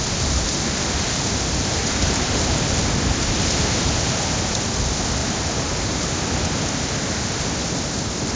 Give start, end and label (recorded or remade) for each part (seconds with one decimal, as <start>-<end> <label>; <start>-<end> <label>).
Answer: 0.0-1.8 recorded; 1.8-2.8 remade; 2.8-5.2 recorded; 5.2-6.1 remade; 6.1-8.4 recorded